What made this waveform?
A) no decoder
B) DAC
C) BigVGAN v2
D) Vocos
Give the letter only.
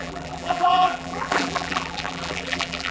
C